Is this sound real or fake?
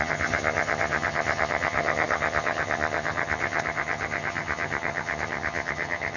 fake